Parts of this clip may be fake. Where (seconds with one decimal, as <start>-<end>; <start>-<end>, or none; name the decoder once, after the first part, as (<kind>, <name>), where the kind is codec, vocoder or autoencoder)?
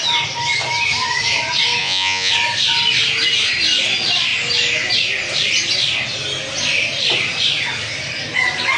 1.8-2.3 (vocoder, Vocos)